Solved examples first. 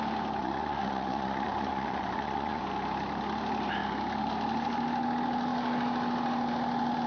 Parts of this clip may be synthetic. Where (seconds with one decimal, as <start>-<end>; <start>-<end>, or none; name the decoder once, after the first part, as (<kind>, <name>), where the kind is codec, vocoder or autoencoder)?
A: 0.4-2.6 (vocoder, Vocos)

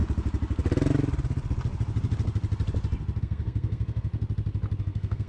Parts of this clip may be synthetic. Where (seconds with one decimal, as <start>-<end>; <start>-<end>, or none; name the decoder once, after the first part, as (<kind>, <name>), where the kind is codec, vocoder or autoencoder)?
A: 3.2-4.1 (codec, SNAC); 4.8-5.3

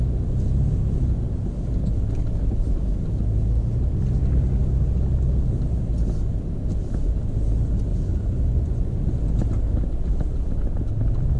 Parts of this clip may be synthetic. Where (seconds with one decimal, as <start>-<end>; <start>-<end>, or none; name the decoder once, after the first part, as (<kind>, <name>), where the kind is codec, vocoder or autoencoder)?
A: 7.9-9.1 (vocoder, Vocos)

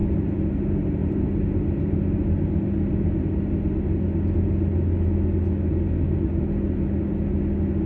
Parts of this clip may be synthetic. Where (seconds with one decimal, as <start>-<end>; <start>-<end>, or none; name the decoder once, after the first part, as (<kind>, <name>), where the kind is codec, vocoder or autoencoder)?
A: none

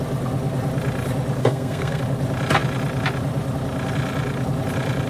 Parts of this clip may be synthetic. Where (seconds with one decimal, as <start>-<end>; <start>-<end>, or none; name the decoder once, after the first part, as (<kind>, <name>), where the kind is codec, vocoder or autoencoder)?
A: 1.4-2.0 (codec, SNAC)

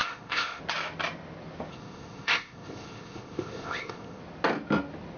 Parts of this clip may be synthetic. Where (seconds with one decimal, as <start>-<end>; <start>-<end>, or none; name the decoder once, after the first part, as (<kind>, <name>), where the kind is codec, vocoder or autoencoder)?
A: 0.0-0.6 (codec, ZipCodec); 1.7-4.2